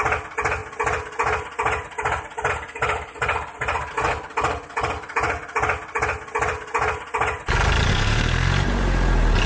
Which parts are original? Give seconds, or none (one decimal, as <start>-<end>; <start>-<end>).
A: 0.0-7.9; 8.5-9.5